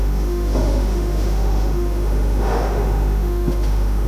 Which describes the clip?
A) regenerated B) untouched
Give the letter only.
A